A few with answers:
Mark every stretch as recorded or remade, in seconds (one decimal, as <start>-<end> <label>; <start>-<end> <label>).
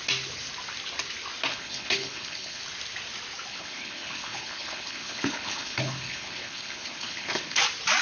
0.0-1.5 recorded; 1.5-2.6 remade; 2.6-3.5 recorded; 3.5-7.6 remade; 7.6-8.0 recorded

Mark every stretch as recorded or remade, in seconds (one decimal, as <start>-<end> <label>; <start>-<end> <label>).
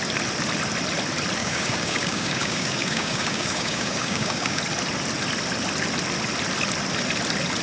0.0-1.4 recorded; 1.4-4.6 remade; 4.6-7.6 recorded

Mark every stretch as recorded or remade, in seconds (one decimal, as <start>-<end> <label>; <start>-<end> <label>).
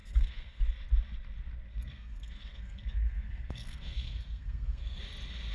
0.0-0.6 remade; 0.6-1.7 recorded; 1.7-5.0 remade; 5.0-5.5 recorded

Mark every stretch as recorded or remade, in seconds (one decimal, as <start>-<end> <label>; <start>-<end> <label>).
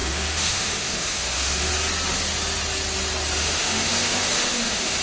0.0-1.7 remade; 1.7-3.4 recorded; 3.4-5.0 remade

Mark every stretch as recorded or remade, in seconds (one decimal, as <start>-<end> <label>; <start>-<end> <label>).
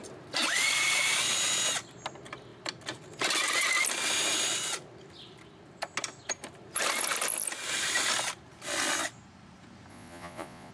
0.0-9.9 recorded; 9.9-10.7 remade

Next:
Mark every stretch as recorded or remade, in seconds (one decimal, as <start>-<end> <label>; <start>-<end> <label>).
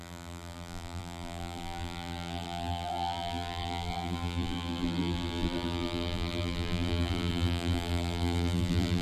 0.0-9.0 remade